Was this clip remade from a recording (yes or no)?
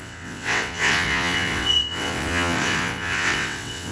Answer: yes